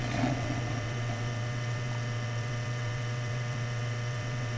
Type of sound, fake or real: fake